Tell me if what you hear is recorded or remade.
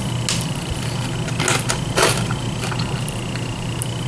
recorded